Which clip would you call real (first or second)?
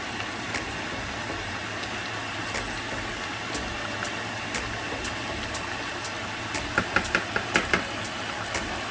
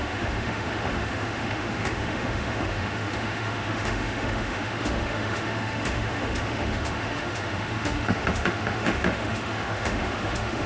first